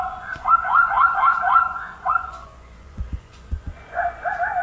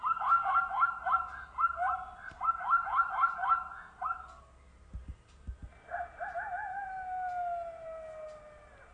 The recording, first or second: second